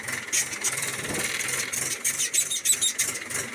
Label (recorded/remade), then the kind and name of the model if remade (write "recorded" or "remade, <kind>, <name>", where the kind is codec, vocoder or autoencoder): recorded